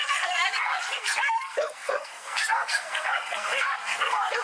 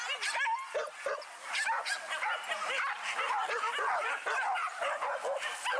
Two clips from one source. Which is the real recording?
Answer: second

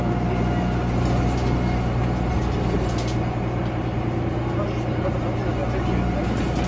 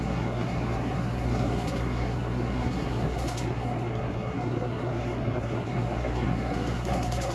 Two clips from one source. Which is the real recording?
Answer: first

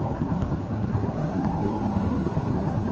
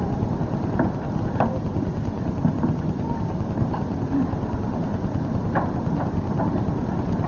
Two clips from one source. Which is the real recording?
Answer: second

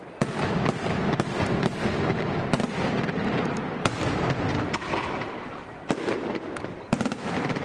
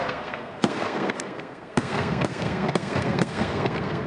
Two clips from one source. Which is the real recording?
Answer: first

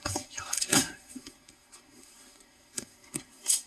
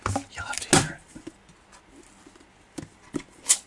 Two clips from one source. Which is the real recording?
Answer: second